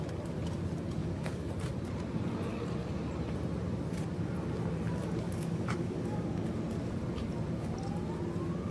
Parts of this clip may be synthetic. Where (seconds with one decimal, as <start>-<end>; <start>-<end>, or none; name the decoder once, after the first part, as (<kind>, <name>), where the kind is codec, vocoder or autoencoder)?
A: 1.0-1.5 (codec, DAC); 5.0-6.5